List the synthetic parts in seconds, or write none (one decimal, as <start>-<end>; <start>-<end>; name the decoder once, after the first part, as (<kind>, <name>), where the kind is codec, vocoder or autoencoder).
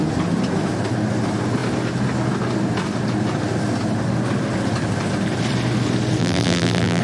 6.2-7.0 (vocoder, BigVGAN v2)